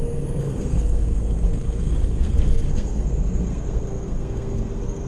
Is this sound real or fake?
fake